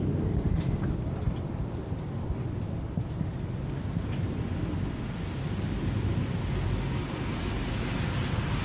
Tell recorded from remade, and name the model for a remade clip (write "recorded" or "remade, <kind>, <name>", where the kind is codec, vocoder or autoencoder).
recorded